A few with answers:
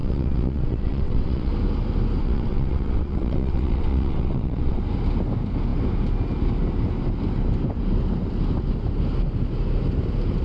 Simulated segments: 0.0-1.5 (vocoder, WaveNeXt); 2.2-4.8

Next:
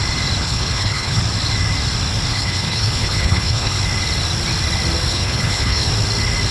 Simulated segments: 0.4-1.2 (codec, HILCodec); 2.3-3.8; 5.1-5.9

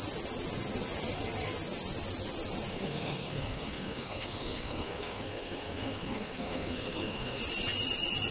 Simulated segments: 2.7-7.4 (codec, SNAC)

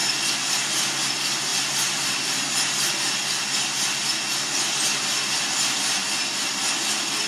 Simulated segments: 1.5-2.9 (vocoder, BigVGAN v2)

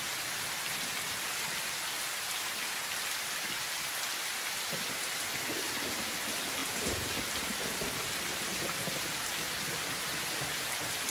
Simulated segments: none

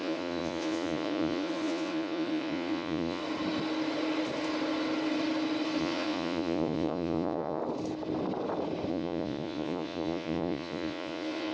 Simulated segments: 0.0-3.2 (vocoder, Vocos); 5.8-7.6; 8.9-11.5

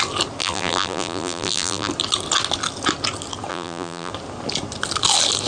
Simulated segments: 0.4-1.9 (vocoder, BigVGAN v2); 3.5-4.1